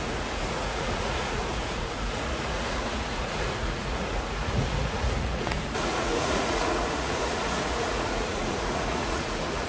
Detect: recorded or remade remade